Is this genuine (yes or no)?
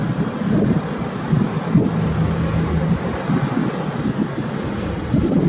yes